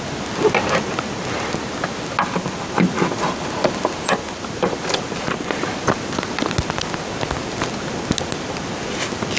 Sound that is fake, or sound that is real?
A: real